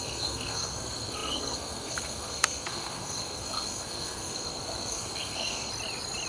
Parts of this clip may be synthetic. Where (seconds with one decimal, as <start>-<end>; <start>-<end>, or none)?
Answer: 0.0-5.7